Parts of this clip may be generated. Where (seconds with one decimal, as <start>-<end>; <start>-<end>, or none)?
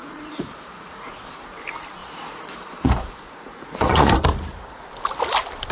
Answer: 0.0-1.2; 2.0-4.1